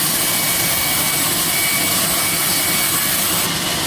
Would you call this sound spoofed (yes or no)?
no